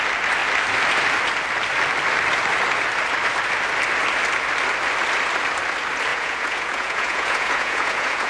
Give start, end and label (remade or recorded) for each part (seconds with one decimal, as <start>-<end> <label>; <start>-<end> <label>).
0.0-6.1 recorded; 6.1-8.3 remade